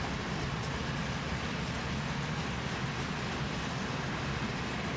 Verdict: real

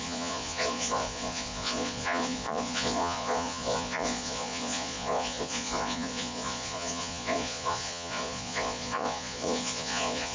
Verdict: fake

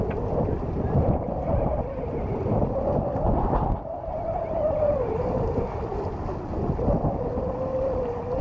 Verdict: real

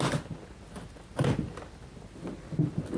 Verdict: real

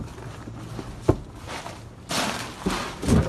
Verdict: real